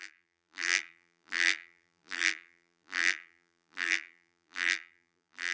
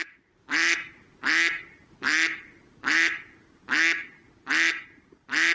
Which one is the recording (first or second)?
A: second